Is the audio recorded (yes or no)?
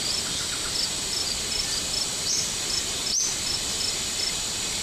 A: yes